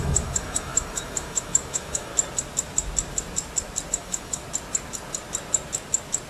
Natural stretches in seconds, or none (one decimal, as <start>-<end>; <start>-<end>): 2.1-3.9; 4.4-6.3